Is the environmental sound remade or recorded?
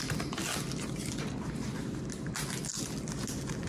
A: recorded